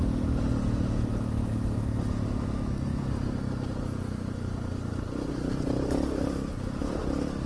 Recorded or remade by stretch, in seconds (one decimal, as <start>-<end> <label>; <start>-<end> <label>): 0.0-7.5 recorded